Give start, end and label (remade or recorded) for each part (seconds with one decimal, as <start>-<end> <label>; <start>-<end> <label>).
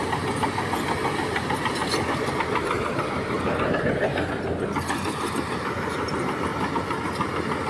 0.0-7.7 recorded